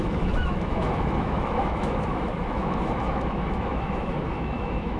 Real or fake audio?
fake